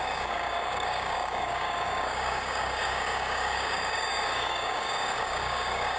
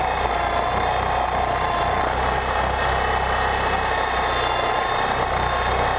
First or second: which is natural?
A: second